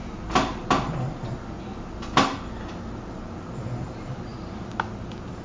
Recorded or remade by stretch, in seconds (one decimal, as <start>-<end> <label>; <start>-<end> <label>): 0.0-5.4 recorded